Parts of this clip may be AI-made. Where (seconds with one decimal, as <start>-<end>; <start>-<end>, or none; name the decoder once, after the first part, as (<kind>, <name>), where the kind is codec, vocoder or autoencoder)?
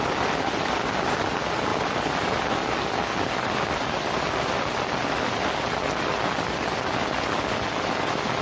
none